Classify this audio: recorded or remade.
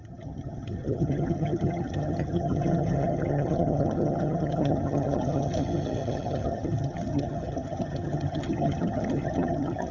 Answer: remade